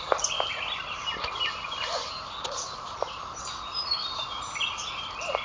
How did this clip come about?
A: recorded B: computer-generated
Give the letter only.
A